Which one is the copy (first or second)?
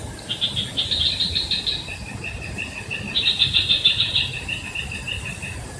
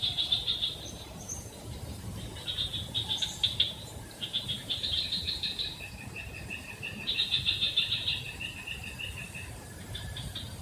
second